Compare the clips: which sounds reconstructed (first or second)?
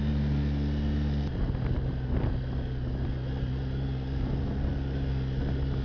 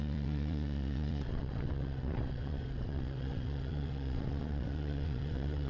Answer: second